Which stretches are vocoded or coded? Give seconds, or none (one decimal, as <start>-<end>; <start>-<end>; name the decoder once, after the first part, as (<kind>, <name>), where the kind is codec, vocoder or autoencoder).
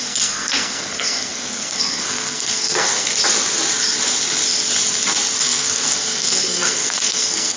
0.0-3.1 (codec, SNAC); 5.4-7.6